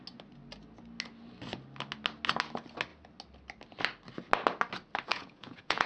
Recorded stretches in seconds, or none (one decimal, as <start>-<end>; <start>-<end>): 0.0-5.1